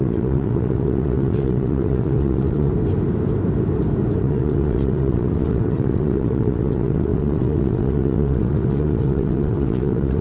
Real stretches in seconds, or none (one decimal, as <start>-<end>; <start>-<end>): 2.7-4.2